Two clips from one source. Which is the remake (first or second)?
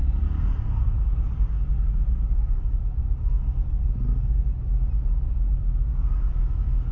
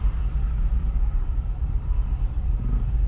second